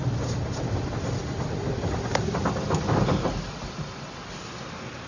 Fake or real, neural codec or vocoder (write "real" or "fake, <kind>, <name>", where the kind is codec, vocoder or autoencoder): real